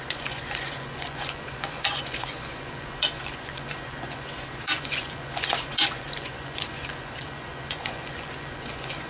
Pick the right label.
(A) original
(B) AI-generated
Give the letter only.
B